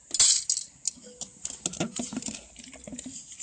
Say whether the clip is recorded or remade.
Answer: recorded